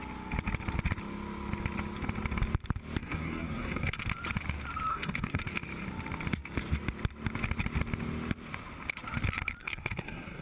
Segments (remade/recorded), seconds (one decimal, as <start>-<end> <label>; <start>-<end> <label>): 0.0-3.0 recorded; 3.0-4.0 remade; 4.0-4.9 recorded; 4.9-5.4 remade; 5.4-9.6 recorded; 9.6-10.4 remade